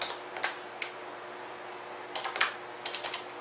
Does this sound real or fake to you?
real